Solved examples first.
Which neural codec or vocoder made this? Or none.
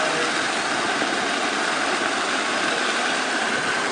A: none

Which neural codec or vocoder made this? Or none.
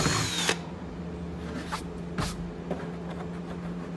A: none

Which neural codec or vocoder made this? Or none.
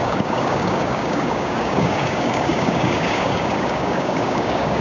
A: codec, DAC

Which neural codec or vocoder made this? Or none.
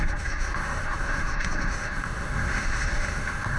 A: autoencoder, DAC-VAE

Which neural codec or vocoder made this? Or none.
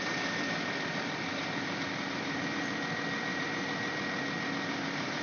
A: none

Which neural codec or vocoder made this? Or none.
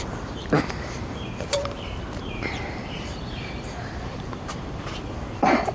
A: vocoder, BigVGAN v2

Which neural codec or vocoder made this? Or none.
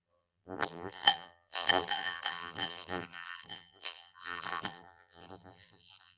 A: vocoder, BigVGAN v2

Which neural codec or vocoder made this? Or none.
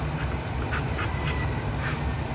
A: none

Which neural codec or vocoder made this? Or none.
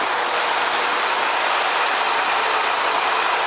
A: none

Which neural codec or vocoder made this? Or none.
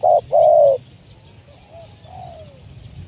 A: none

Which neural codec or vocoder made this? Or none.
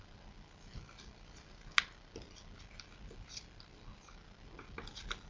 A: none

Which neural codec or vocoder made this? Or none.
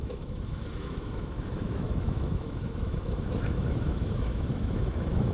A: autoencoder, DAC-VAE